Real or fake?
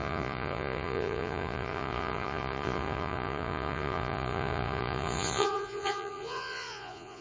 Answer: fake